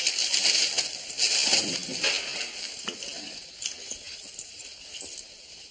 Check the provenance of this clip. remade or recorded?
recorded